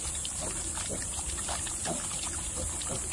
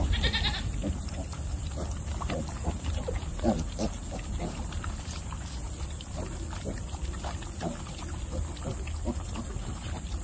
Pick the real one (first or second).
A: second